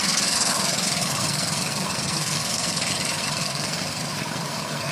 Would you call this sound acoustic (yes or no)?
no